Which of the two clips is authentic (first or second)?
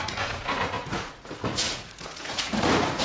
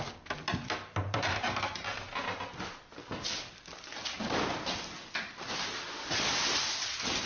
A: second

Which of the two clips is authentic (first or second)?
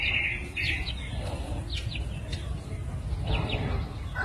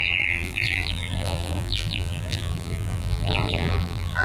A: first